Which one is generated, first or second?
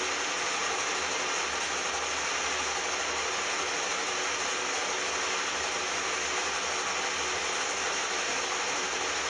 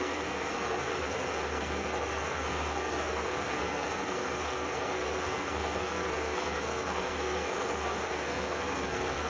second